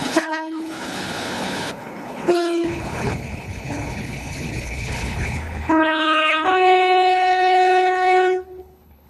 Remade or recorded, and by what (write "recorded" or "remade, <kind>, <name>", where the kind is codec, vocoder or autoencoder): remade, codec, HILCodec